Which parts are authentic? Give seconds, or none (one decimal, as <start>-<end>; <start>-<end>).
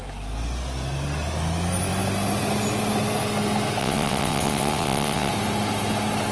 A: 0.0-3.8; 5.3-6.3